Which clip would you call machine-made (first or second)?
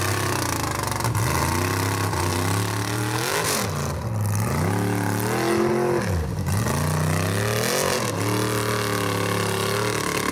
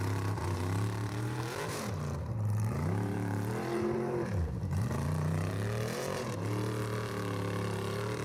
second